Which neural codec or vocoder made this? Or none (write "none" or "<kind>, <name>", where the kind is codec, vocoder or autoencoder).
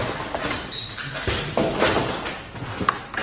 none